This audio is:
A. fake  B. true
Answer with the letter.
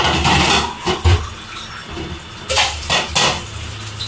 B